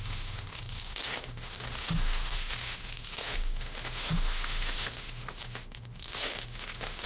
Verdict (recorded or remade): remade